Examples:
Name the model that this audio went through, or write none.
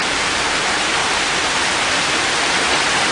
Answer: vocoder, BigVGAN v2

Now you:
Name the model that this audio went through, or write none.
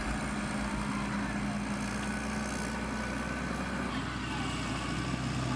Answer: none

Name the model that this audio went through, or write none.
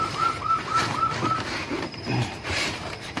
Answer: vocoder, BigVGAN v2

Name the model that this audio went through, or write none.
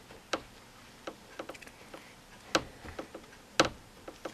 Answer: none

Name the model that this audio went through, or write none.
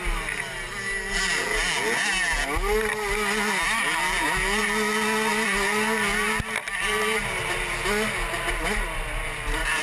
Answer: none